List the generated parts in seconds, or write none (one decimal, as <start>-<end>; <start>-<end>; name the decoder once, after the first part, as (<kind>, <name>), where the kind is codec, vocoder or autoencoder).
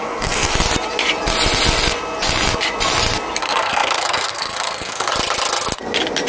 0.0-0.5 (codec, SNAC); 3.4-5.1